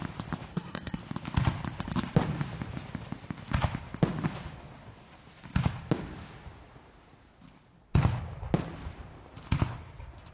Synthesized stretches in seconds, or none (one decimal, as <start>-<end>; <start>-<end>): 0.5-1.0